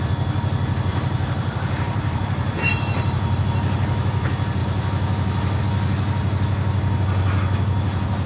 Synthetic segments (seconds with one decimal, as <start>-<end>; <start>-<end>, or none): 0.9-3.4